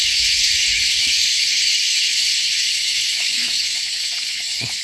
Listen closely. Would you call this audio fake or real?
fake